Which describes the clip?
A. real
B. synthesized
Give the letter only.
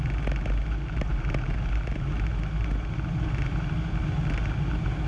A